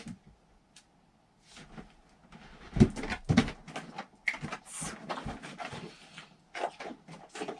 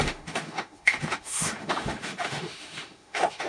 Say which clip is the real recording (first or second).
first